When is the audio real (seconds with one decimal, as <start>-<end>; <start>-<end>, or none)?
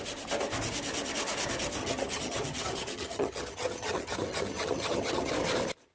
0.0-1.8; 5.3-5.9